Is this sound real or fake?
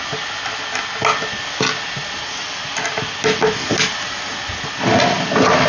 real